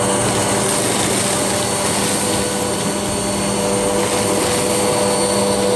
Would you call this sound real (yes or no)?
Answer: yes